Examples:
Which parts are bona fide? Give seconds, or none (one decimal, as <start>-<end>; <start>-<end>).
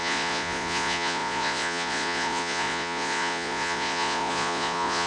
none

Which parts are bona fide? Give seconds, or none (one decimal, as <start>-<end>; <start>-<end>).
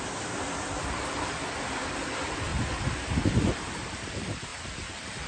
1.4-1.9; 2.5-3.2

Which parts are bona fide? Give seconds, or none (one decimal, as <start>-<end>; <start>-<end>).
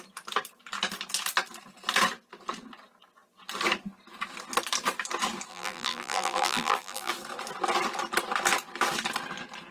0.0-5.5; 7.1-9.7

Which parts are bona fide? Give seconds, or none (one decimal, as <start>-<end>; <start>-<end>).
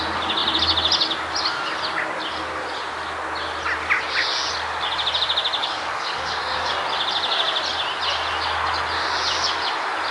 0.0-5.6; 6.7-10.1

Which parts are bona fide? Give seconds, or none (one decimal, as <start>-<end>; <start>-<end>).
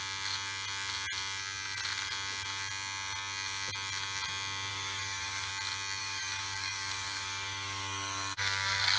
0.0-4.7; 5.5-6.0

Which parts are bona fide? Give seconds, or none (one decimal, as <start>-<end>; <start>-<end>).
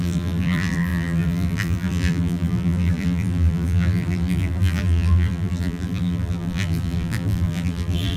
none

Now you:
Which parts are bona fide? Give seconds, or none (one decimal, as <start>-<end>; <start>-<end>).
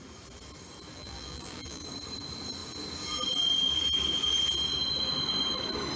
0.0-0.9; 1.8-6.0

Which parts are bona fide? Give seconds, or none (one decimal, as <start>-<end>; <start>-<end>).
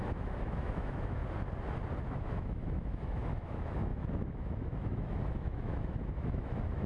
1.2-2.0